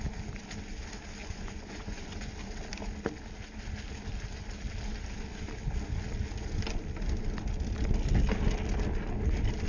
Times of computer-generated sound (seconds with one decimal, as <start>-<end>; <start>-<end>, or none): 1.2-2.3

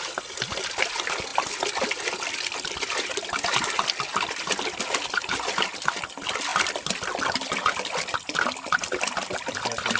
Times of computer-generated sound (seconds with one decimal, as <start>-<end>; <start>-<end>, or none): 6.5-7.6